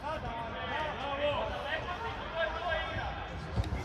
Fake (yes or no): no